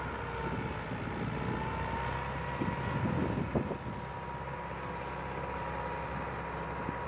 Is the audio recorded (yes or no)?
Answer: yes